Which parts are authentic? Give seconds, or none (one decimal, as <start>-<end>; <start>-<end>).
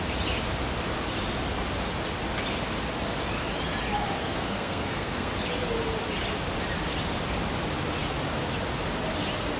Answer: 0.0-4.2; 5.3-9.6